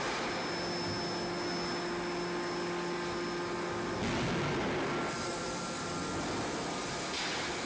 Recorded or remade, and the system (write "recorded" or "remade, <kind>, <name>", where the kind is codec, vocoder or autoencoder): recorded